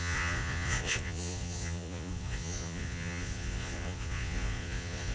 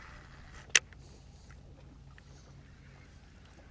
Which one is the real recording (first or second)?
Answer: second